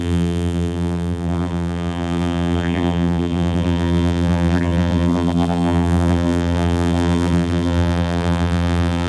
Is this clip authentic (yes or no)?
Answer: no